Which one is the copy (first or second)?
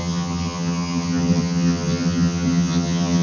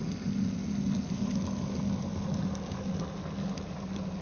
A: first